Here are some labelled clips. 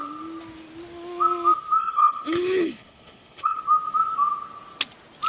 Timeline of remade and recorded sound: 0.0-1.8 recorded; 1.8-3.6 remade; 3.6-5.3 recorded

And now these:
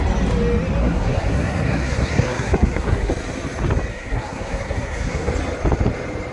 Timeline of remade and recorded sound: 0.0-0.8 recorded; 0.8-3.1 remade; 3.1-3.9 recorded; 3.9-5.3 remade; 5.3-6.3 recorded

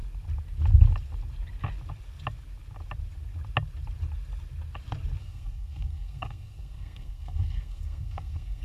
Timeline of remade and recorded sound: 0.0-5.2 recorded; 5.2-8.6 remade

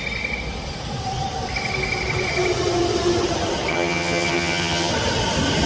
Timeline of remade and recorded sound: 0.0-3.7 recorded; 3.7-4.9 remade; 4.9-5.7 recorded

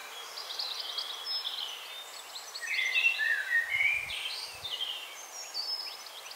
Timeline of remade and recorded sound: 0.0-0.8 remade; 0.8-3.3 recorded; 3.3-5.1 remade; 5.1-6.4 recorded

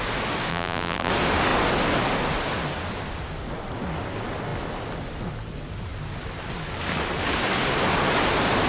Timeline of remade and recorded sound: 0.0-0.5 recorded; 0.5-1.1 remade; 1.1-8.7 recorded